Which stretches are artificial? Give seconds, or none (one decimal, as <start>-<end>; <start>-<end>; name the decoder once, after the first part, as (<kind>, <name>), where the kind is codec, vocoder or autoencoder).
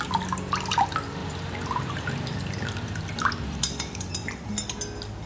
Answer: 1.2-4.4 (vocoder, BigVGAN v2)